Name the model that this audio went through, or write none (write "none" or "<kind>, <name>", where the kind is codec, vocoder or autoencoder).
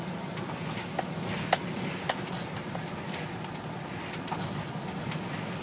none